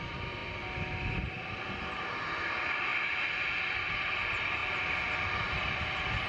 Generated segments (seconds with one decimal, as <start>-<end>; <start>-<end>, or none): 0.0-0.4; 1.5-2.9; 3.9-6.3